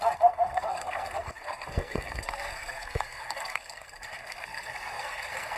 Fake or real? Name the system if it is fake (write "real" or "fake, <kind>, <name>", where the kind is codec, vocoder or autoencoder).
fake, codec, SNAC